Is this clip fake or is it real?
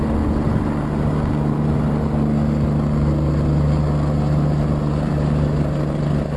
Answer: real